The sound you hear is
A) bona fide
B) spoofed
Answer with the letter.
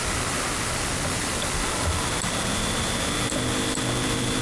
A